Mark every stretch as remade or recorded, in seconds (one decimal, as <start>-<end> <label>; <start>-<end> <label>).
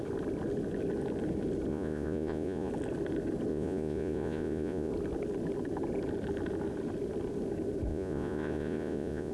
0.0-1.7 recorded; 1.7-2.7 remade; 2.7-3.5 recorded; 3.5-4.9 remade; 4.9-7.9 recorded; 7.9-9.3 remade